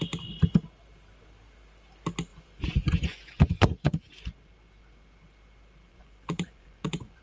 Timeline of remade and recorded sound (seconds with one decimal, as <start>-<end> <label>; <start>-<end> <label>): 0.0-2.3 recorded; 2.3-4.1 remade; 4.1-5.9 recorded; 5.9-7.2 remade